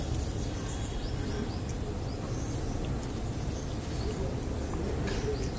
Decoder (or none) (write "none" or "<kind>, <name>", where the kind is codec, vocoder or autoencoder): none